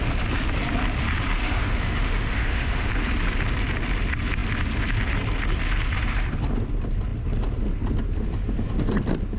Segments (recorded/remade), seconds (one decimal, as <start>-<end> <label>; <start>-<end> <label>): 0.0-1.4 recorded; 1.4-2.9 remade; 2.9-9.4 recorded